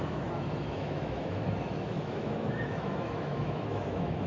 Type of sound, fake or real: fake